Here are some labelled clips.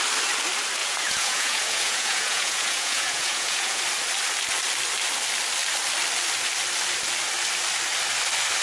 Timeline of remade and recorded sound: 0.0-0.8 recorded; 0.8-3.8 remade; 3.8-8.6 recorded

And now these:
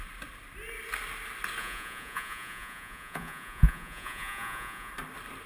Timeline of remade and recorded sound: 0.0-1.6 recorded; 1.6-4.9 remade; 4.9-5.5 recorded

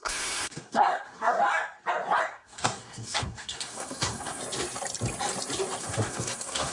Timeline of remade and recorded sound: 0.0-1.4 remade; 1.4-2.2 recorded; 2.2-4.4 remade; 4.4-5.8 recorded; 5.8-6.7 remade

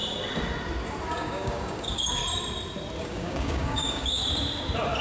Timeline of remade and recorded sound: 0.0-1.1 recorded; 1.1-2.2 remade; 2.2-3.0 recorded; 3.0-4.2 remade; 4.2-5.0 recorded

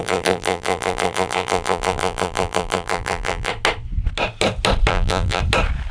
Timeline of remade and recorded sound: 0.0-3.5 remade; 3.5-4.9 recorded; 4.9-5.4 remade; 5.4-5.9 recorded

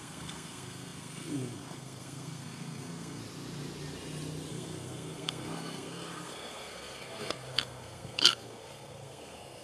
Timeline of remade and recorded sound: 0.0-3.2 remade; 3.2-4.5 recorded; 4.5-9.6 remade

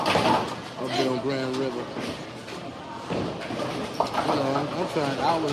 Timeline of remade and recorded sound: 0.0-5.5 recorded

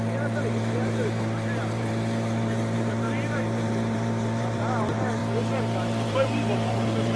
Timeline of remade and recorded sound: 0.0-7.2 remade